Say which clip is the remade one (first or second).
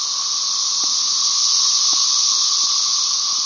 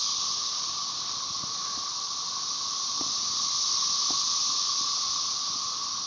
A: first